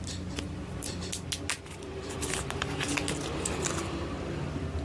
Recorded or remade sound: recorded